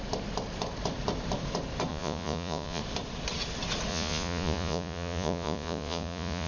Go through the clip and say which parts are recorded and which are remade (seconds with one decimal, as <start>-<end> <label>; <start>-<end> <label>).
0.0-1.9 recorded; 1.9-2.8 remade; 2.8-3.9 recorded; 3.9-6.5 remade